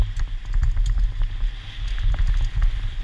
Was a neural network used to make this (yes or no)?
no